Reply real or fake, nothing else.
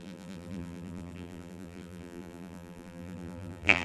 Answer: fake